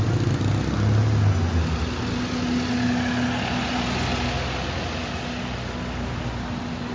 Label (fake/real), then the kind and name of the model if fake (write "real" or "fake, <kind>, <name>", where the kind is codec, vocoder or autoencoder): real